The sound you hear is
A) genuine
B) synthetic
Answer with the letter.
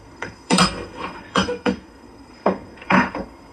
B